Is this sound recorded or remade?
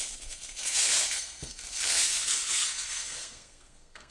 remade